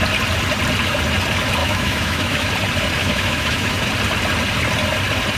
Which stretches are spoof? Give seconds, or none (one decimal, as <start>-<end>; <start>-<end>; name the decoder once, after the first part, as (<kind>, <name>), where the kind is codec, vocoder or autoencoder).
1.6-2.5 (autoencoder, DAC-VAE); 3.0-3.9